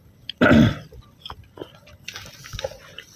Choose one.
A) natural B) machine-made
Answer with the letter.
A